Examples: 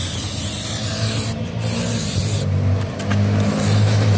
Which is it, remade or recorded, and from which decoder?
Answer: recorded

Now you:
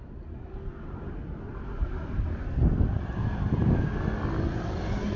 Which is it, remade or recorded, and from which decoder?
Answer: recorded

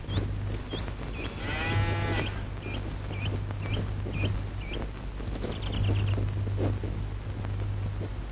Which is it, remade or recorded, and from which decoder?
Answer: recorded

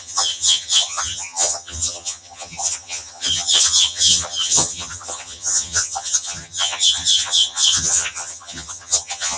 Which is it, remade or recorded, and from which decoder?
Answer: remade, vocoder, HiFi-GAN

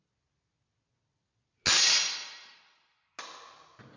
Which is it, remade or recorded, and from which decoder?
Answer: recorded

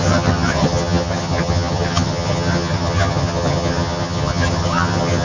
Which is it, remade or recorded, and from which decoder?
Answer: remade, vocoder, HiFi-GAN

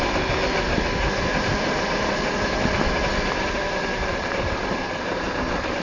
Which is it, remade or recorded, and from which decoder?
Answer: recorded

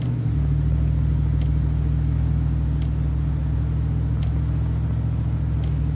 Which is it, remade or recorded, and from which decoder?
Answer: recorded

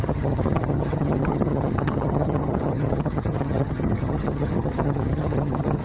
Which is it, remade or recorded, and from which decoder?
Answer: remade, vocoder, HiFi-GAN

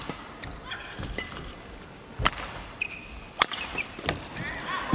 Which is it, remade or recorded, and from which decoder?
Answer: recorded